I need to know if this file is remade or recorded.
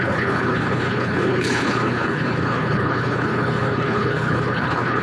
remade